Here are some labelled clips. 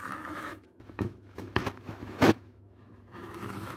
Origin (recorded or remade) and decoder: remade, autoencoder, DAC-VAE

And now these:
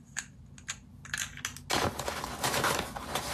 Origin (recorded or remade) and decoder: recorded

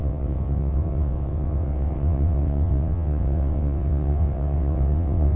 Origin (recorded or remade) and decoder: remade, vocoder, WaveNeXt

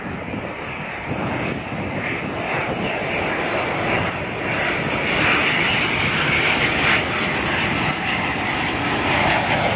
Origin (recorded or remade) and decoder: recorded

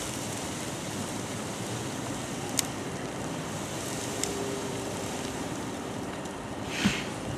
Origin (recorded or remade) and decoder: remade, vocoder, BigVGAN v2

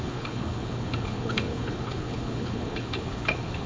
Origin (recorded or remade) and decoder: remade, codec, HILCodec